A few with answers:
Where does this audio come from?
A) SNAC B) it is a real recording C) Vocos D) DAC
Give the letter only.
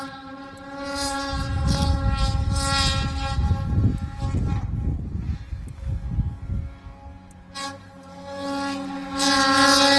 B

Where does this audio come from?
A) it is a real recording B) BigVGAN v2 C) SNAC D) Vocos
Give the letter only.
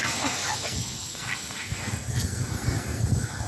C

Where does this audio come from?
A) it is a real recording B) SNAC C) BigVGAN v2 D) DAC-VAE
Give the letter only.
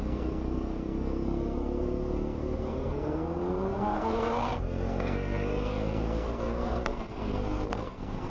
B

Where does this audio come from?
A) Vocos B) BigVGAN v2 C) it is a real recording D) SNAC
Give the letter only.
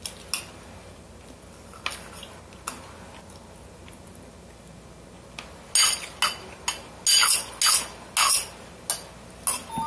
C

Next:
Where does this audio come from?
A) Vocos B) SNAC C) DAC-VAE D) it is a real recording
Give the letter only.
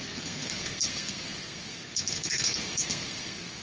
B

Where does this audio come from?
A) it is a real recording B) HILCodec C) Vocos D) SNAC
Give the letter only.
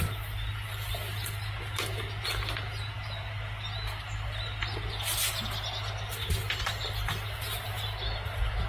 A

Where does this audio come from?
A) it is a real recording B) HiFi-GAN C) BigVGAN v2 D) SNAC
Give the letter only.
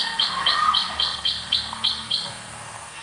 D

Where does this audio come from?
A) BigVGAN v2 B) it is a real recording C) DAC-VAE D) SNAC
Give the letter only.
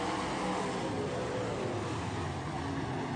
B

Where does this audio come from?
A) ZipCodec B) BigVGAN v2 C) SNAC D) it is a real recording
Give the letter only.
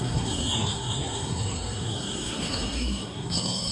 C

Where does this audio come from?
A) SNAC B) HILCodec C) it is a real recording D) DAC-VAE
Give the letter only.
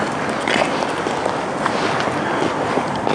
C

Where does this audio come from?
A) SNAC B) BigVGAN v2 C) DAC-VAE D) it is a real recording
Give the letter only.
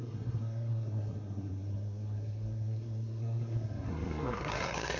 A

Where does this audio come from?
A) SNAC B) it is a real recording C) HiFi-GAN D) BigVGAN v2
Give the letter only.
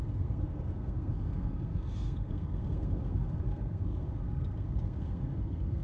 A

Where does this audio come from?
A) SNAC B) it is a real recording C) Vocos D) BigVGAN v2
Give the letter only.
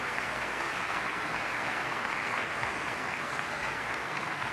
A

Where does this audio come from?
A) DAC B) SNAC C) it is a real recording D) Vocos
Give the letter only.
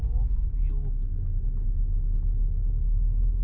C